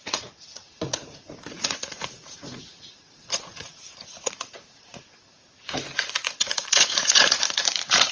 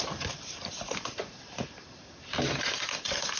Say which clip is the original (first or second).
second